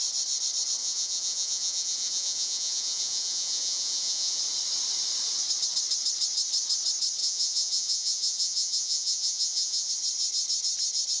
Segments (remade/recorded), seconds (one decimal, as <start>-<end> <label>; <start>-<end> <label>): 0.0-0.8 recorded; 0.8-4.4 remade; 4.4-7.2 recorded; 7.2-9.9 remade; 9.9-11.2 recorded